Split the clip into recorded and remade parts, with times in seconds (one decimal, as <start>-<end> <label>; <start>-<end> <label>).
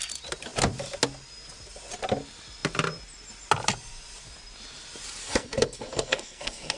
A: 0.0-5.2 recorded; 5.2-6.8 remade